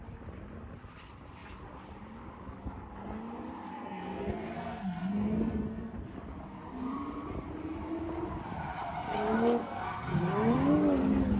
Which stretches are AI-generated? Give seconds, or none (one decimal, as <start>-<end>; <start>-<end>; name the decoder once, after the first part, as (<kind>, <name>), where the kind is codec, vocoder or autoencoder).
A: 3.7-6.1 (codec, SNAC); 9.6-10.2